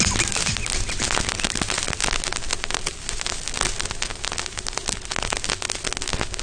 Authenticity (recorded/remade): recorded